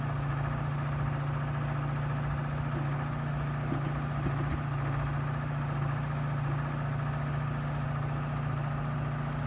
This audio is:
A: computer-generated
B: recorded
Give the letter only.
B